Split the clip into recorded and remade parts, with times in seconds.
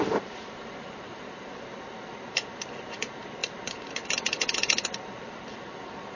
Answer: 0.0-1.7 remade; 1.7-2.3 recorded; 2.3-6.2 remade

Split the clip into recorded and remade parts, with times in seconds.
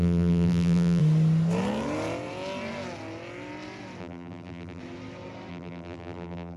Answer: 0.0-1.0 remade; 1.0-4.0 recorded; 4.0-4.8 remade; 4.8-5.5 recorded; 5.5-6.6 remade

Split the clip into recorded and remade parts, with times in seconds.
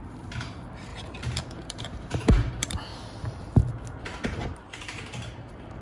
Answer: 0.0-0.9 remade; 0.9-1.6 recorded; 1.6-2.9 remade; 2.9-4.0 recorded; 4.0-5.8 remade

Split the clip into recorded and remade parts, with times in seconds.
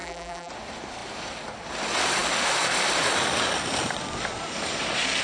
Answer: 0.0-0.5 remade; 0.5-5.2 recorded